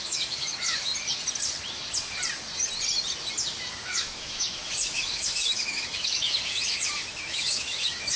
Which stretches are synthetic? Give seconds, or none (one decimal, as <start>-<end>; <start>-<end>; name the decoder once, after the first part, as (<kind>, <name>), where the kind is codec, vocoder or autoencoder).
0.0-0.9 (autoencoder, DAC-VAE); 3.7-8.2